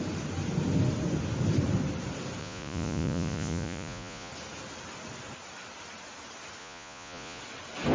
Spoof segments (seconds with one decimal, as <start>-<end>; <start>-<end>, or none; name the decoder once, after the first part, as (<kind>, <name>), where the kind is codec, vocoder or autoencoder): 2.4-4.3 (vocoder, Vocos); 6.6-7.4

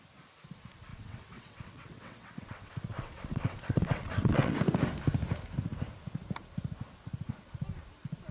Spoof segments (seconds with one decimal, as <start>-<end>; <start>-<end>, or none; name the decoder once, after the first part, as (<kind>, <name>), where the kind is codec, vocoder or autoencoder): 0.9-4.5 (vocoder, WaveNeXt)

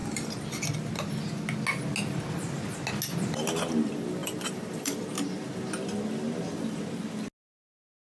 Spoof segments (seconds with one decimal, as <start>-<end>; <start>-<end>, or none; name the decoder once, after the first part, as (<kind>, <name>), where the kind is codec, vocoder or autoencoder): 4.2-5.0 (vocoder, BigVGAN v2)